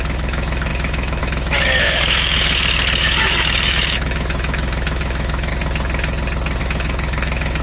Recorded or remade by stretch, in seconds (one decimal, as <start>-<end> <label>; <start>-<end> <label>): 0.0-5.5 remade; 5.5-6.6 recorded; 6.6-7.6 remade